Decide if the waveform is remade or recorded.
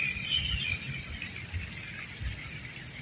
recorded